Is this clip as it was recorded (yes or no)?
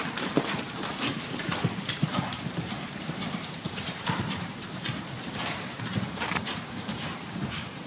no